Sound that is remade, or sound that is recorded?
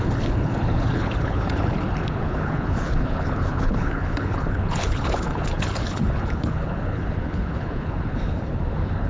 remade